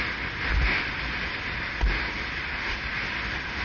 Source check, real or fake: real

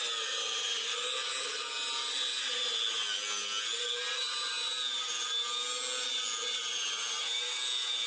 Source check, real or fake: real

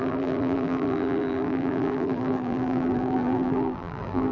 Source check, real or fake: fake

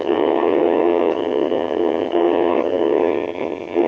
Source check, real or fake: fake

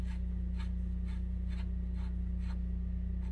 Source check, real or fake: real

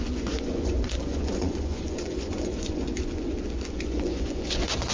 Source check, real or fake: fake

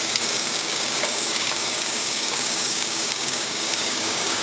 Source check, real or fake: fake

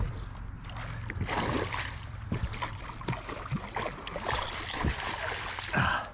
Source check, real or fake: real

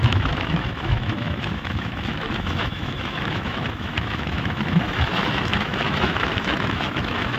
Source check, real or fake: fake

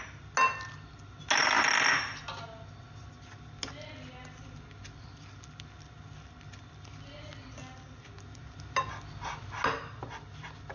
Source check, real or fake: real